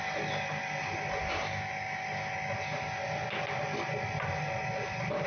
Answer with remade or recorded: recorded